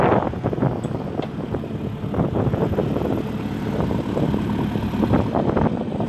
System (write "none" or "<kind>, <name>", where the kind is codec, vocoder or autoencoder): none